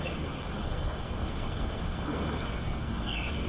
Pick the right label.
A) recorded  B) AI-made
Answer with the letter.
B